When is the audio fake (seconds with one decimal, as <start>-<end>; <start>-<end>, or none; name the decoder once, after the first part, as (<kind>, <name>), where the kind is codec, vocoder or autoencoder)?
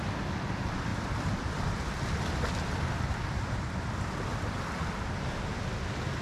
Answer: 0.9-4.6 (vocoder, BigVGAN v2)